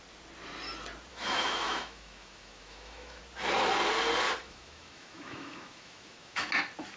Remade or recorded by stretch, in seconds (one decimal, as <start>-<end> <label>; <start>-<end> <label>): 0.0-1.1 recorded; 1.1-3.2 remade; 3.2-4.4 recorded; 4.4-6.5 remade; 6.5-7.0 recorded